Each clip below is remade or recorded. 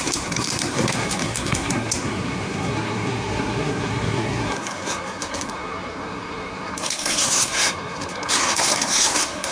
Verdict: remade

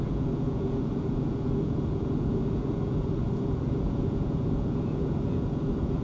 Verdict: remade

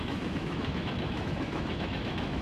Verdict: remade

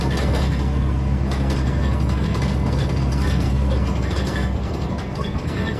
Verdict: remade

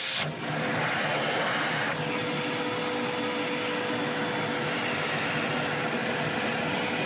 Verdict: recorded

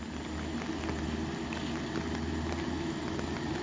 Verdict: recorded